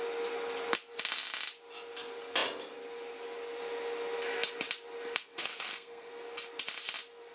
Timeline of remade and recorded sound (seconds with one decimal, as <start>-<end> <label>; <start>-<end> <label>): 0.0-5.2 recorded; 5.2-6.1 remade; 6.1-7.3 recorded